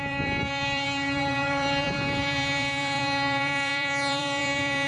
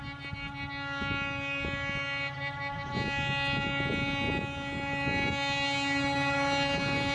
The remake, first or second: first